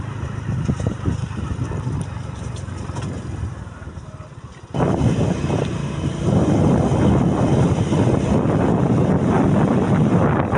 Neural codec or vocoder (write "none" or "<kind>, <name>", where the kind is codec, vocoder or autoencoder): none